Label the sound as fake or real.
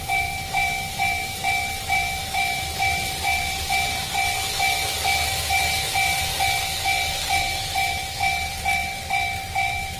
fake